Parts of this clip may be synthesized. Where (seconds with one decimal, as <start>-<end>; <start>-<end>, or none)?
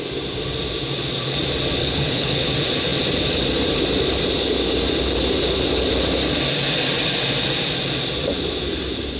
1.8-2.5